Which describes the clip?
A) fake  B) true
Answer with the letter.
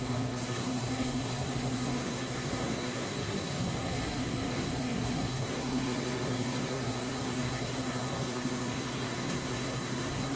A